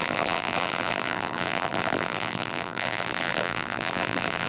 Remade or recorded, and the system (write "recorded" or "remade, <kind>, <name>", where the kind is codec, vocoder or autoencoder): remade, vocoder, BigVGAN v2